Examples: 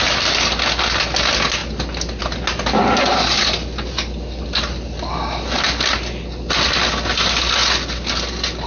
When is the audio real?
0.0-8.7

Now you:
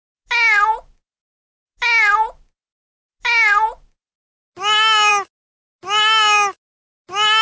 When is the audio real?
0.0-7.4

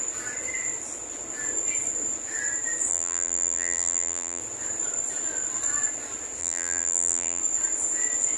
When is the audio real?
0.0-2.9; 4.4-6.4; 7.4-8.4

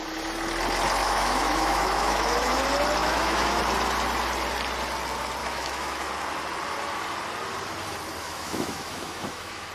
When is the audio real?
0.0-1.0; 2.6-3.0; 3.6-5.4; 6.1-8.2

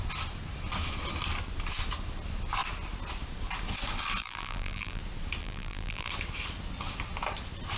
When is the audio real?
0.0-4.2; 5.0-5.4; 6.1-7.8

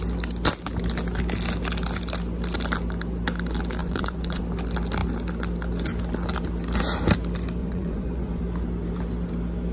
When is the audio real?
0.0-3.8; 4.4-7.6; 8.4-9.7

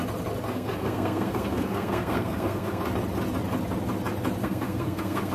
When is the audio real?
0.0-0.5; 2.8-4.4

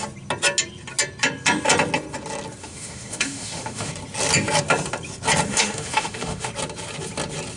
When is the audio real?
0.0-2.6; 3.9-5.5; 6.5-7.6